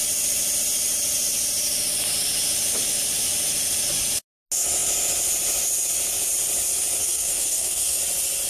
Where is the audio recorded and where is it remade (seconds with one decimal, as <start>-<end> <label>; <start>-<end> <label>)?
0.0-7.0 recorded; 7.0-8.0 remade; 8.0-8.5 recorded